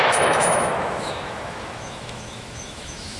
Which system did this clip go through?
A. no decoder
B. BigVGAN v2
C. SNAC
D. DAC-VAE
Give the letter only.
D